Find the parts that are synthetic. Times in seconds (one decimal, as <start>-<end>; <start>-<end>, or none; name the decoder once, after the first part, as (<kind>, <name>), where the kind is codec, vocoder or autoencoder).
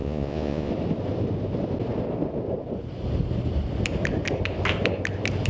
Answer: 0.0-0.7 (vocoder, Vocos)